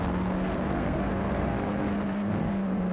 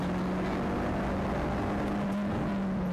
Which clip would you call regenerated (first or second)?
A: first